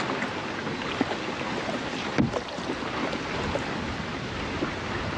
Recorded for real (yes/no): yes